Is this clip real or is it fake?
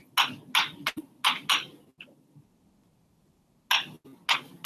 real